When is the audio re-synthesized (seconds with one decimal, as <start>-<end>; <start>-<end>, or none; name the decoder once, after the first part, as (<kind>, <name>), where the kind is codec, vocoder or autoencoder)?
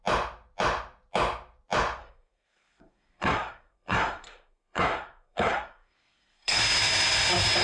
2.0-6.6 (codec, SNAC)